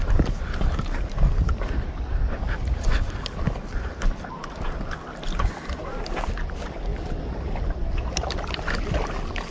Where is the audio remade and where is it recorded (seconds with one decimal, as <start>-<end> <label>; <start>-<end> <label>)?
0.0-9.5 recorded